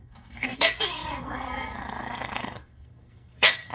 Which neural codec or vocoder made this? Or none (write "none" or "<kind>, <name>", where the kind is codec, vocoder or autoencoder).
codec, SNAC